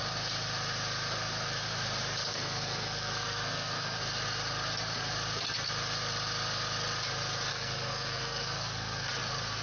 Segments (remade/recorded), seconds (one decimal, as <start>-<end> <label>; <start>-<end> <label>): 0.0-2.3 recorded; 2.3-4.0 remade; 4.0-7.5 recorded; 7.5-9.1 remade; 9.1-9.6 recorded

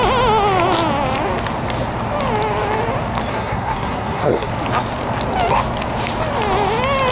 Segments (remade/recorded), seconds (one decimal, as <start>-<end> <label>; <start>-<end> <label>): 0.0-3.3 recorded; 3.3-4.5 remade; 4.5-7.1 recorded

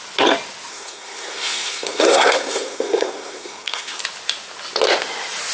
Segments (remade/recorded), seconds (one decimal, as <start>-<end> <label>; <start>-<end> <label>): 0.0-0.7 recorded; 0.7-4.0 remade; 4.0-5.5 recorded